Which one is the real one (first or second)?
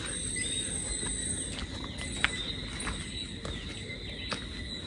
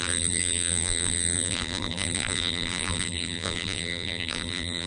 first